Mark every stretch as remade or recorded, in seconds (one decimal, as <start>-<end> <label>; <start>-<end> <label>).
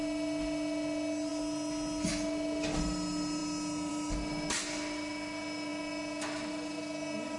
0.0-7.4 recorded